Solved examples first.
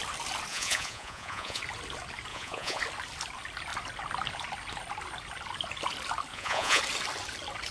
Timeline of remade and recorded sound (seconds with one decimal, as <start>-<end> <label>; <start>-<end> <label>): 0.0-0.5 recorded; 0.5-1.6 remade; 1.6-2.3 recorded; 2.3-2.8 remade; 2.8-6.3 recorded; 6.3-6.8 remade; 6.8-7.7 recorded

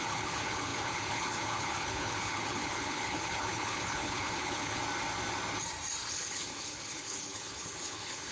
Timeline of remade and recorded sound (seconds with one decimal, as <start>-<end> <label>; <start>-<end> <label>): 0.0-4.8 remade; 4.8-6.1 recorded; 6.1-8.3 remade

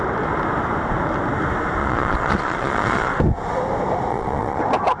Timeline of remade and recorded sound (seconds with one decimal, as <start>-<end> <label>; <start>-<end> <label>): 0.0-1.8 recorded; 1.8-3.1 remade; 3.1-4.1 recorded; 4.1-4.6 remade; 4.6-5.0 recorded

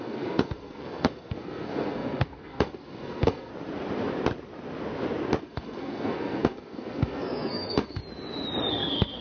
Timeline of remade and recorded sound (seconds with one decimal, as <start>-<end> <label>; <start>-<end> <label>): 0.0-3.5 remade; 3.5-5.4 recorded; 5.4-8.0 remade; 8.0-8.7 recorded; 8.7-9.2 remade

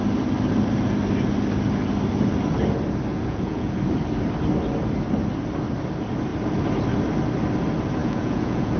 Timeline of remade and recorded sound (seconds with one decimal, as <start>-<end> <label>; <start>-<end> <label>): 0.0-3.1 recorded; 3.1-3.7 remade; 3.7-8.0 recorded; 8.0-8.8 remade

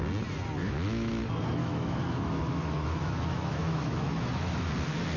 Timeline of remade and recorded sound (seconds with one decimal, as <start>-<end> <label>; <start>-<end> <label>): 0.0-0.6 recorded; 0.6-1.2 remade; 1.2-1.6 recorded; 1.6-4.7 remade; 4.7-5.2 recorded